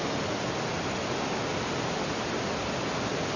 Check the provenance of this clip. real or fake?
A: real